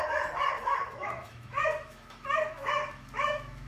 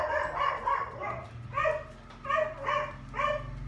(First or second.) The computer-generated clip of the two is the first